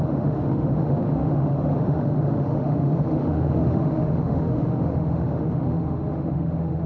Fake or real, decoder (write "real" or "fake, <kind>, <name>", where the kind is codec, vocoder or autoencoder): fake, autoencoder, DAC-VAE